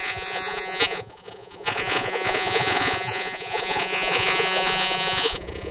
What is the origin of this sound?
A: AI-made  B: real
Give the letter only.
A